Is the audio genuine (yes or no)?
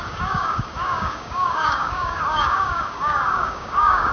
no